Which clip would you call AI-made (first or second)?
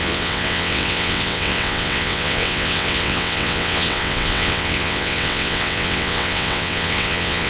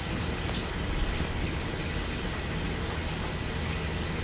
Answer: first